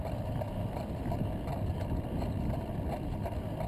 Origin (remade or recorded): recorded